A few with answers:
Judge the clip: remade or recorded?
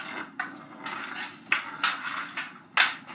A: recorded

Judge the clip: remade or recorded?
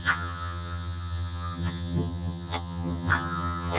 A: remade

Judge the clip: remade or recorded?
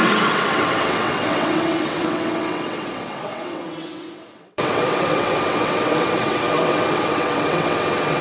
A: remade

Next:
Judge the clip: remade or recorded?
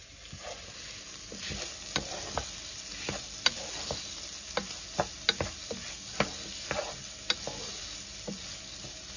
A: recorded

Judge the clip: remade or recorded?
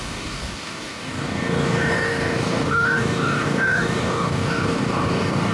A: remade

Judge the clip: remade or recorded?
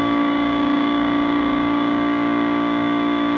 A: remade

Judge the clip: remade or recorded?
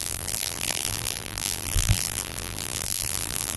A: remade